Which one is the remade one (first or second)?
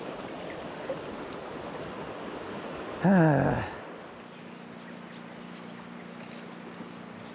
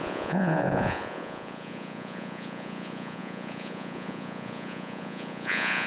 second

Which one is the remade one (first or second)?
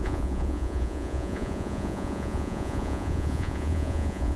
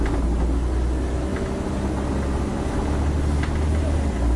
first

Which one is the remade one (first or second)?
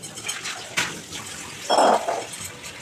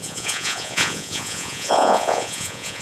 second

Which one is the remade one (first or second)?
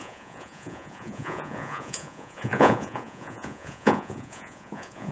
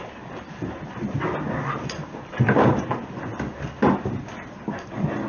first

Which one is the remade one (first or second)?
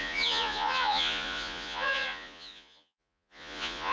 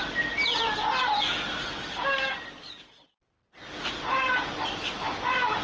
first